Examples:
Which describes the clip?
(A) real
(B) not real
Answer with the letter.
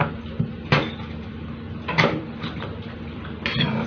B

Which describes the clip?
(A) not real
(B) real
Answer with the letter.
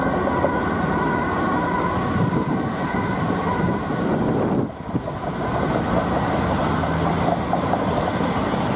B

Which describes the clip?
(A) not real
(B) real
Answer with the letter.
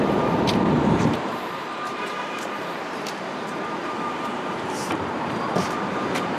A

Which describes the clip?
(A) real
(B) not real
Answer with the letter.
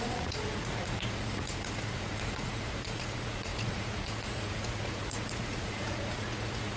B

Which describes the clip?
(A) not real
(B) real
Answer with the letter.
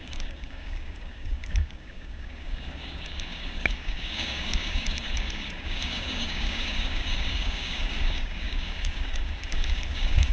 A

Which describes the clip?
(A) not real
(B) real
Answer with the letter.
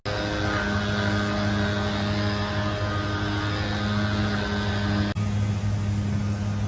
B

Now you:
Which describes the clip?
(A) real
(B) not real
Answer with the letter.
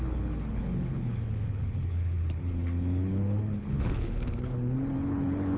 B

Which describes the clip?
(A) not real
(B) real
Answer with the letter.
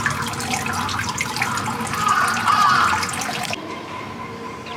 B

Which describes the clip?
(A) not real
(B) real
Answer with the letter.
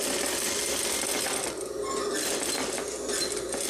B